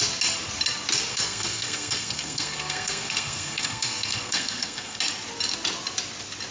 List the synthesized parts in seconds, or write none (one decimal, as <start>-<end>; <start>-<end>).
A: 1.1-5.0